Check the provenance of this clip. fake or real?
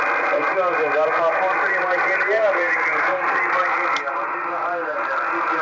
real